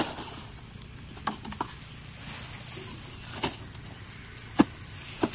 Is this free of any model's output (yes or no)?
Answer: yes